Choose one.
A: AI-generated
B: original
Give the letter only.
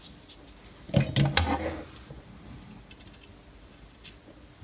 B